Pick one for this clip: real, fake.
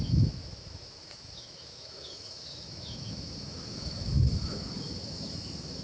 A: fake